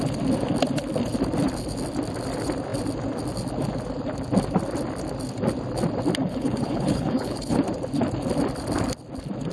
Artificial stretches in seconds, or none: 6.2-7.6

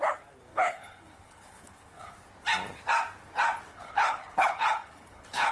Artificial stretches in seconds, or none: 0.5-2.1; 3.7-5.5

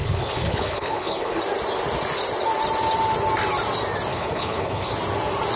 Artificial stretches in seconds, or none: 0.0-1.4; 4.1-4.9

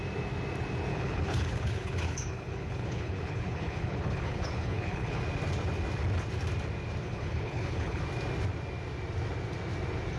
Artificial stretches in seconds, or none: 0.9-5.2; 7.0-8.0